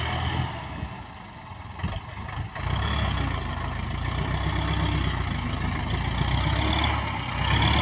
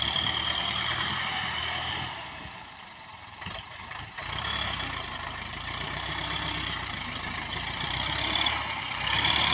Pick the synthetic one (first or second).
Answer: second